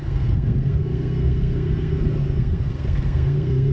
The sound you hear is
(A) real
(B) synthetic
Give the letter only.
B